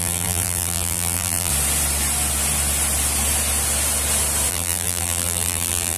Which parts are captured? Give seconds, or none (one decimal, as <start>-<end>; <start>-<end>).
1.5-4.5